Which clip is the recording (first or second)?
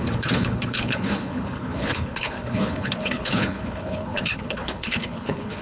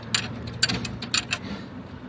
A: second